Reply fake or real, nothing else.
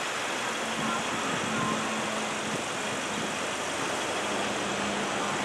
real